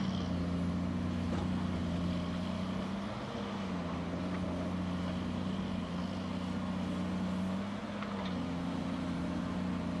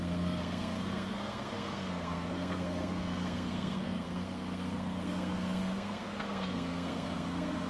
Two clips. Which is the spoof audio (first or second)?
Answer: second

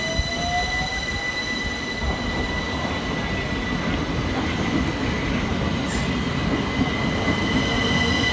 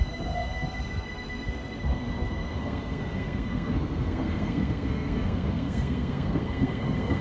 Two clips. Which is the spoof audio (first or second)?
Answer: second